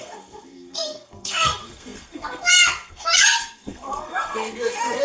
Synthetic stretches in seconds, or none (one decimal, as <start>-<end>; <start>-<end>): 0.0-5.0